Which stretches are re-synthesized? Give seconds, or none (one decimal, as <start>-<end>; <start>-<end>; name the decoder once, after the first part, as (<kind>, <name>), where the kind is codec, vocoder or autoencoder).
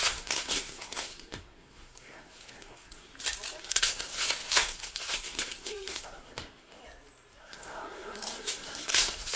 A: 0.0-3.1 (codec, SNAC); 3.6-6.8; 7.4-9.4